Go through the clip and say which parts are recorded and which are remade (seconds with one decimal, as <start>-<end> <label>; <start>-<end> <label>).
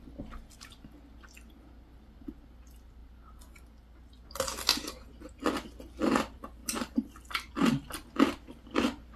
0.0-9.2 recorded